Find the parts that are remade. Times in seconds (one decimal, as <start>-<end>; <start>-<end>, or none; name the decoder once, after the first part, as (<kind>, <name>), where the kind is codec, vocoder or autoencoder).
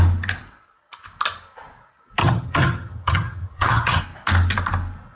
2.2-4.0 (vocoder, HiFi-GAN)